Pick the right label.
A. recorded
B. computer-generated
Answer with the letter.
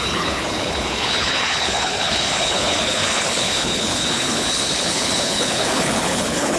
B